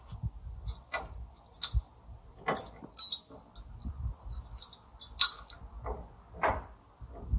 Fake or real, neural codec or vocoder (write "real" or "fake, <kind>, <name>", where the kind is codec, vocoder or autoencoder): real